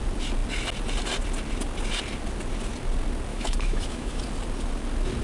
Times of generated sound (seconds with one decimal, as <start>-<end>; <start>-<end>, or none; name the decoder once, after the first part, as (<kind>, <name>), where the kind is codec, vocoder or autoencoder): 3.3-4.2 (autoencoder, DAC-VAE)